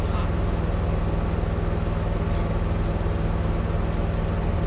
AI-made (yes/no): no